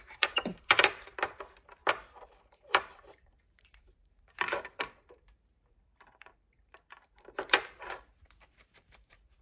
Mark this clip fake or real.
fake